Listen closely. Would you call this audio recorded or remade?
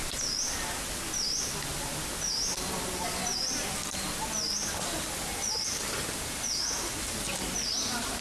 recorded